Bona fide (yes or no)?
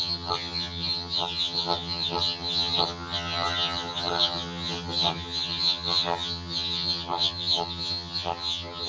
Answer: no